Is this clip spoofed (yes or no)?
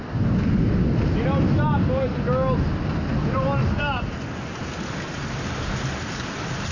no